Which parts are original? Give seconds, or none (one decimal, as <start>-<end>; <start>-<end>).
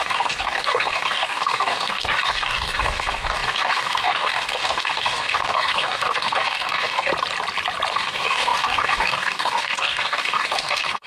7.1-7.9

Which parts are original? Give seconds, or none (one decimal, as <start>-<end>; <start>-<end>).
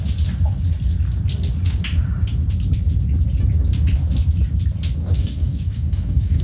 0.0-5.0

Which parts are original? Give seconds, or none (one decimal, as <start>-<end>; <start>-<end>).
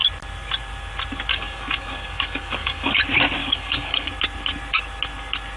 0.0-1.3; 3.0-3.4; 4.1-5.6